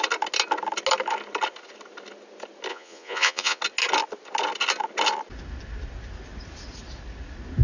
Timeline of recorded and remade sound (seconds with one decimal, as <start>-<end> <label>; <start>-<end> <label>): 0.0-2.7 recorded; 2.7-3.6 remade; 3.6-7.6 recorded